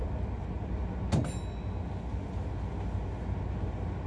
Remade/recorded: recorded